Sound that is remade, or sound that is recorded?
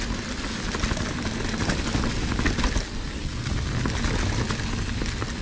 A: recorded